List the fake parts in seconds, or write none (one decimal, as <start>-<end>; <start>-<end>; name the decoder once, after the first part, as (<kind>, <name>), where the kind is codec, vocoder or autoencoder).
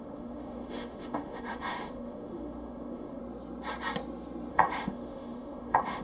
0.0-3.2 (autoencoder, DAC-VAE); 4.5-6.0